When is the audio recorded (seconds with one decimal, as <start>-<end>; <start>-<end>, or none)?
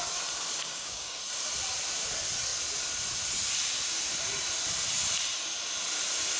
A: 0.0-0.7; 1.2-6.4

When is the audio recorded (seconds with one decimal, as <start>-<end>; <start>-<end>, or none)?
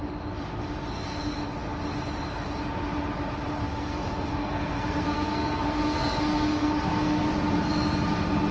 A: 0.0-3.6; 7.3-8.5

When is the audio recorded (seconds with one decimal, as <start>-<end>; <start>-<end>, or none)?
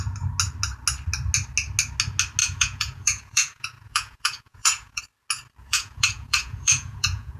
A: 0.0-2.4; 5.0-5.6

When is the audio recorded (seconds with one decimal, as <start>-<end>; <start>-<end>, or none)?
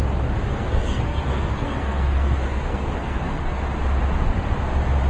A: 0.0-0.5; 3.6-5.1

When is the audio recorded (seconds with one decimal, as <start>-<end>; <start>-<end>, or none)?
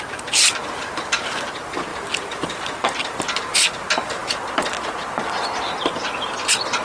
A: 0.0-1.9; 3.2-6.8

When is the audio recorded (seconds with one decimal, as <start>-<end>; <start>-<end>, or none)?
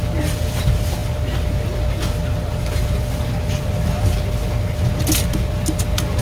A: 0.0-6.2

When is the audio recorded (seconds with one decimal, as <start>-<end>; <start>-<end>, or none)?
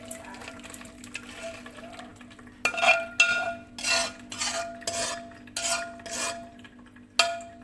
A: 0.0-0.4; 1.0-7.6